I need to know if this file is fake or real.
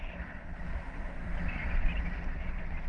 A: real